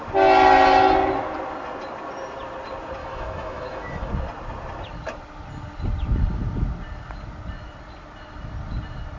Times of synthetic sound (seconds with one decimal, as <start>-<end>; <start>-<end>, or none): 3.0-4.1